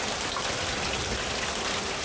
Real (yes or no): yes